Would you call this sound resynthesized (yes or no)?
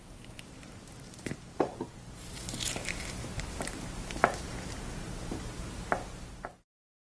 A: yes